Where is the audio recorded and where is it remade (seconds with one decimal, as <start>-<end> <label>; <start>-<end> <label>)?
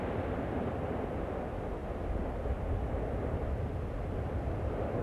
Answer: 0.0-5.0 recorded